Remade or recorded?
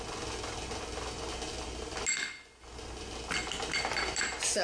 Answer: recorded